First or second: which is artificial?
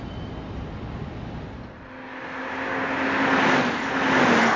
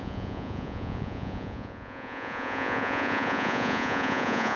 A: second